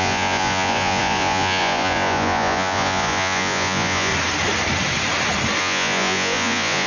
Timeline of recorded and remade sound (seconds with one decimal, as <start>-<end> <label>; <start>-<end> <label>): 0.0-4.1 remade; 4.1-5.6 recorded; 5.6-6.9 remade

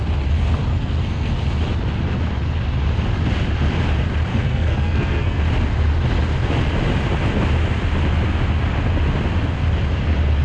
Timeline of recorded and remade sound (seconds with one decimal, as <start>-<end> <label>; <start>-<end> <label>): 0.0-0.7 recorded; 0.7-1.4 remade; 1.4-4.3 recorded; 4.3-5.4 remade; 5.4-10.4 recorded

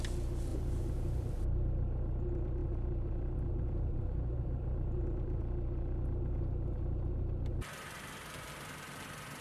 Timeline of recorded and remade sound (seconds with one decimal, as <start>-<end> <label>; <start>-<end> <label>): 0.0-0.5 recorded; 0.5-1.2 remade; 1.2-2.6 recorded; 2.6-5.4 remade; 5.4-9.4 recorded

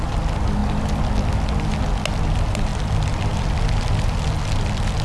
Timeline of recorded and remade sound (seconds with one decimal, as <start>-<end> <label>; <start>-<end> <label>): 0.0-5.0 recorded

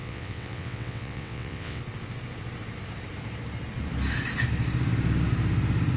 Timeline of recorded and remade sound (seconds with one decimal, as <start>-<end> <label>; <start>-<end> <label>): 0.0-1.8 remade; 1.8-6.0 recorded